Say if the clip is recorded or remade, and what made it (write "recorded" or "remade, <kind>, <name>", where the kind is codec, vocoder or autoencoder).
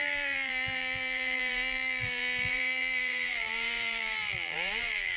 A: remade, vocoder, BigVGAN v2